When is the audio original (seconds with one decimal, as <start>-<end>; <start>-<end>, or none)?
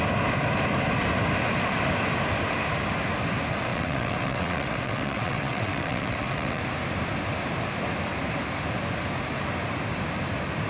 0.0-3.7; 6.6-10.7